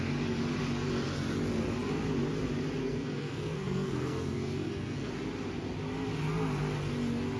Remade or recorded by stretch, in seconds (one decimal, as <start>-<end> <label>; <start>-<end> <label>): 0.0-2.8 recorded; 2.8-5.1 remade; 5.1-7.4 recorded